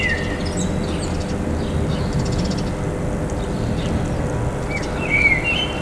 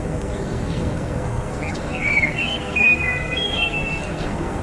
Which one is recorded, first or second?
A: first